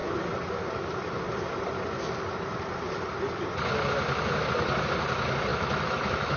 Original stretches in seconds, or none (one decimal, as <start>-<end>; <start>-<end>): 0.0-5.5